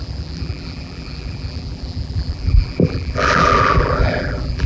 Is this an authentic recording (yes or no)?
no